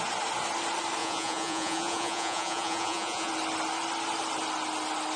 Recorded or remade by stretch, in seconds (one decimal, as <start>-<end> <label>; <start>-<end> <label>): 0.0-1.0 recorded; 1.0-3.3 remade; 3.3-5.2 recorded